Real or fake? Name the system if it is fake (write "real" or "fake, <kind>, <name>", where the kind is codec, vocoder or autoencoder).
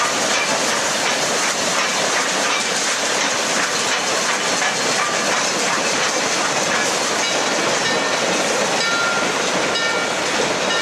real